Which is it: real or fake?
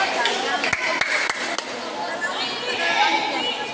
real